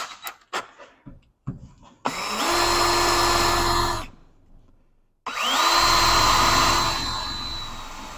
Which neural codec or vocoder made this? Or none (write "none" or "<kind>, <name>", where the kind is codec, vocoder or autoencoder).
none